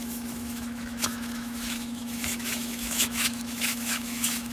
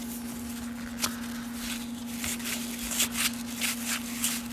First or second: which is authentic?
second